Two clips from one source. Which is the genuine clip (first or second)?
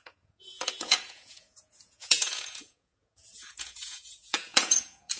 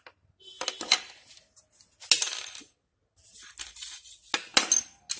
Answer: second